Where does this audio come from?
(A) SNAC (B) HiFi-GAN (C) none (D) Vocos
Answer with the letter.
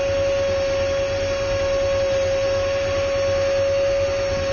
C